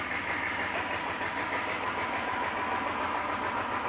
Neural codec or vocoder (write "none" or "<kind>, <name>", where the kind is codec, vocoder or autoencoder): none